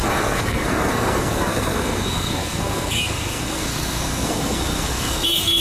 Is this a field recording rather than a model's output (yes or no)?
no